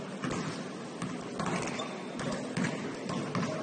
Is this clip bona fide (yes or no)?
yes